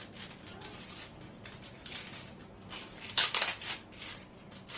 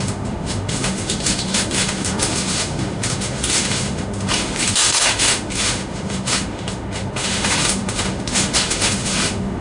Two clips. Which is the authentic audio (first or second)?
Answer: first